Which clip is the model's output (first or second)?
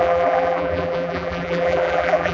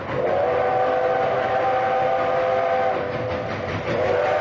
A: first